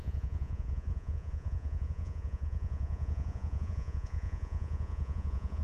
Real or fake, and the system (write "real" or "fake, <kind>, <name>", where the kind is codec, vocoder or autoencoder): fake, vocoder, Vocos